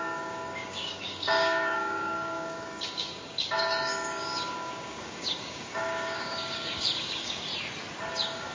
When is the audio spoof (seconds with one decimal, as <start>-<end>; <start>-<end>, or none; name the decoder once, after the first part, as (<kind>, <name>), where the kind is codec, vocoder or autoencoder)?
0.0-7.5 (codec, DAC); 8.1-8.5